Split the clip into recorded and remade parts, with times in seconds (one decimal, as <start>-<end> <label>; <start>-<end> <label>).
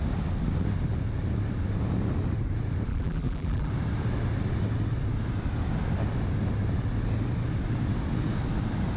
0.0-2.9 recorded; 2.9-3.7 remade; 3.7-9.0 recorded